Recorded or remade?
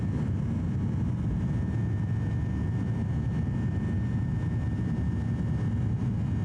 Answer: recorded